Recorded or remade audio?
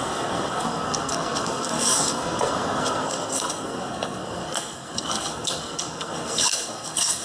remade